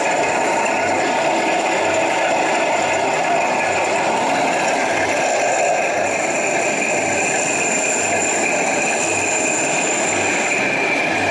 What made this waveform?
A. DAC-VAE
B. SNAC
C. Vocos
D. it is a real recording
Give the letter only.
D